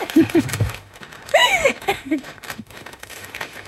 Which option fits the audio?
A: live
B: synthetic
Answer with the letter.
B